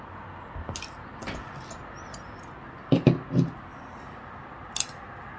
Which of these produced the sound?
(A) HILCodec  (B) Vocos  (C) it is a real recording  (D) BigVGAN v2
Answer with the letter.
C